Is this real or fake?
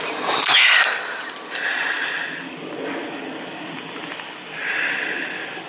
real